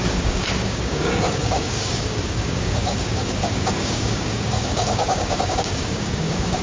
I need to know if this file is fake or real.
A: fake